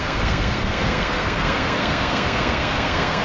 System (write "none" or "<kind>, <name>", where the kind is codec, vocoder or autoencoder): codec, SNAC